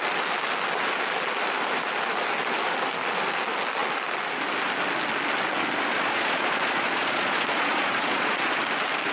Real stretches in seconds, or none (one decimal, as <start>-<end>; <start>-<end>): 0.0-5.9; 8.6-9.1